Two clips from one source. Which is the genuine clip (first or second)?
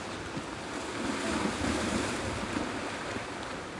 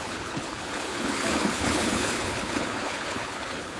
first